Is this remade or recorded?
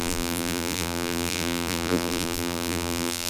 remade